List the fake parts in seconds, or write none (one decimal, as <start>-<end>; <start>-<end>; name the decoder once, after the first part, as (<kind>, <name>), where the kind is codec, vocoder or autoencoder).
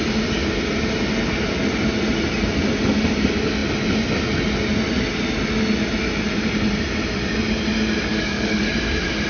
8.1-8.7 (codec, DAC)